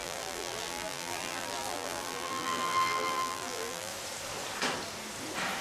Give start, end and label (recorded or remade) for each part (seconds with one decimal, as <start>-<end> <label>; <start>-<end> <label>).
0.0-3.9 remade; 3.9-5.6 recorded